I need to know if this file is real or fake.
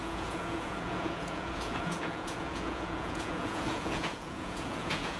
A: fake